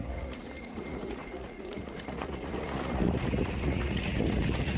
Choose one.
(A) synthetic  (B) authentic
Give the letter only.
A